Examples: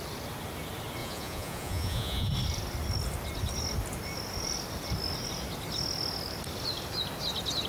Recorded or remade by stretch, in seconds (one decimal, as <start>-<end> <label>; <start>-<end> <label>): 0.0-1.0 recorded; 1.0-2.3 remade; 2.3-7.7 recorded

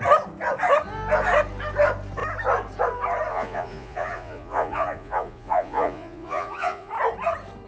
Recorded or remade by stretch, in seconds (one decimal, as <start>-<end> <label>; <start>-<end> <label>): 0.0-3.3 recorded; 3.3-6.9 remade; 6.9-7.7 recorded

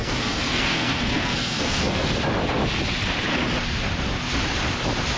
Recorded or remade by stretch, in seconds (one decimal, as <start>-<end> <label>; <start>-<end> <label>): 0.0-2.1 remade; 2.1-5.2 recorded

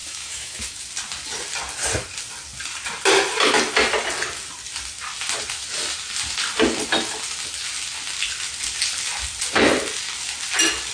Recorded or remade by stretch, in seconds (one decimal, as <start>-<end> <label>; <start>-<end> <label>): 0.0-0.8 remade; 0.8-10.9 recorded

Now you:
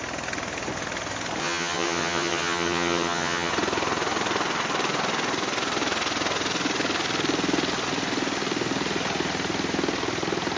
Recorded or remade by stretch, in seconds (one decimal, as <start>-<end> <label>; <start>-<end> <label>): 0.0-1.4 recorded; 1.4-3.5 remade; 3.5-10.6 recorded

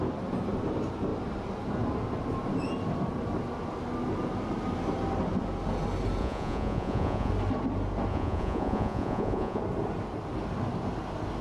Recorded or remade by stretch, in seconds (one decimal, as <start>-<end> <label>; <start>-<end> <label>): 0.0-6.2 recorded; 6.2-7.3 remade; 7.3-8.1 recorded; 8.1-9.6 remade; 9.6-11.4 recorded